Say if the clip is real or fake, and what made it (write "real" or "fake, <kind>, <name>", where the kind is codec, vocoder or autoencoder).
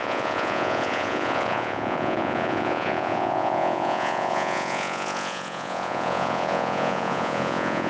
fake, vocoder, Vocos